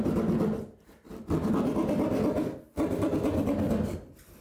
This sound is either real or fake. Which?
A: real